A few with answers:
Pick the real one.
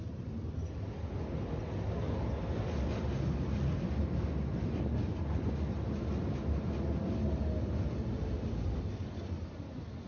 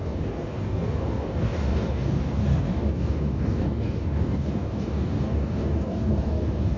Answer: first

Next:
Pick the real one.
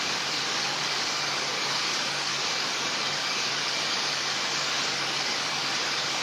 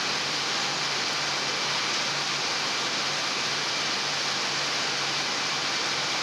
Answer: second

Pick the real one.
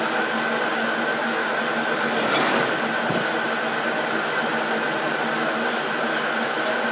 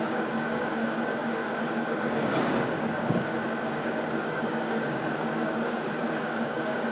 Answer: first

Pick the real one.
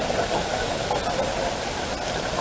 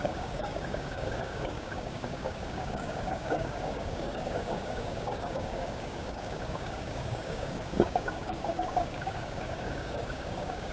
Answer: first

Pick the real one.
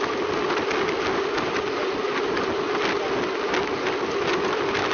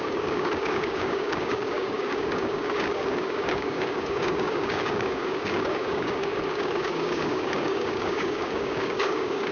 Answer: first